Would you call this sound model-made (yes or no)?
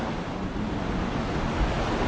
no